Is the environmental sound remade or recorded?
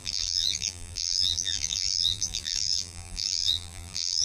remade